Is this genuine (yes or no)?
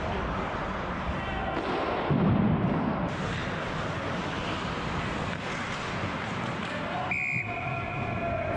yes